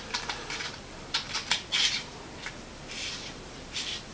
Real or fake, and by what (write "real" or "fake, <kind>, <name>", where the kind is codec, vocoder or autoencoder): fake, vocoder, BigVGAN v2